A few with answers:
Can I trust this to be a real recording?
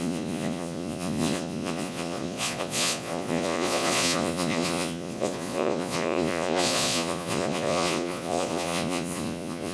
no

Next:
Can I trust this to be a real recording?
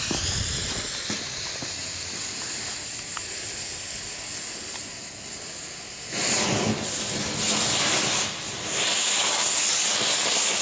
yes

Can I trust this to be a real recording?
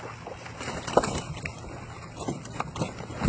yes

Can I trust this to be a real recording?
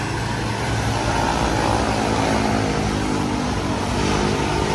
yes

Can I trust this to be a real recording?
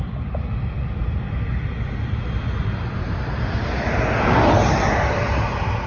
yes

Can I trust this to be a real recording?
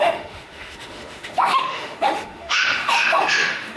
no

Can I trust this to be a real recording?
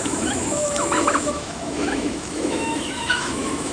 no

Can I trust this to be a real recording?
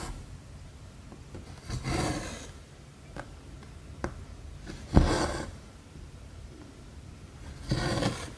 yes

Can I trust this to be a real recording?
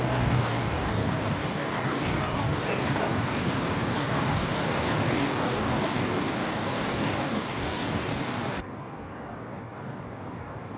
no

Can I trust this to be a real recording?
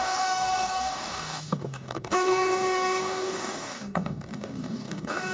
no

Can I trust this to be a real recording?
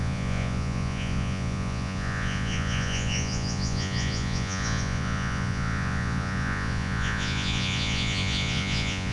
no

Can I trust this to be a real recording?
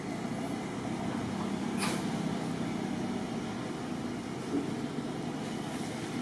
yes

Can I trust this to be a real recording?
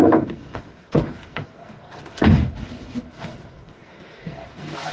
no